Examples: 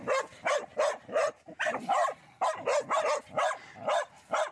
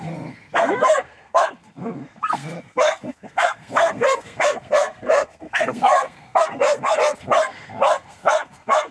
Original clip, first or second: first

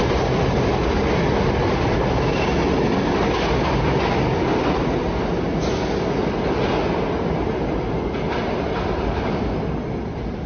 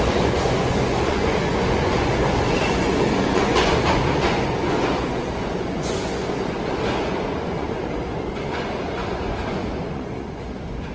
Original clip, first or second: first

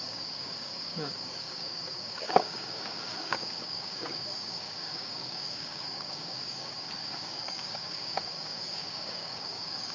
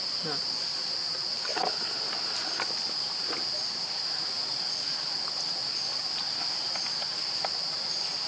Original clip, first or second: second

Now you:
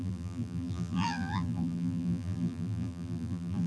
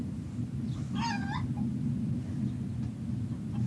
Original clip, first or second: second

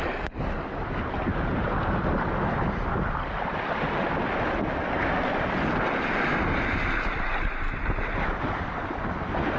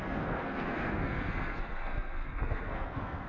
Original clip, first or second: first